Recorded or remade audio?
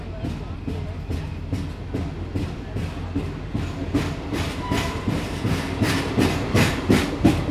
recorded